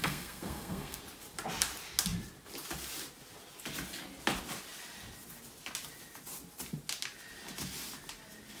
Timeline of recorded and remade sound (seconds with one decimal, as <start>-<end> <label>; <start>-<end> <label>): 0.0-1.0 remade; 1.0-8.6 recorded